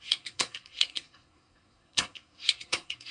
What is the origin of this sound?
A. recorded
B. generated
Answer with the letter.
B